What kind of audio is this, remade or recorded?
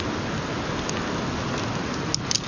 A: recorded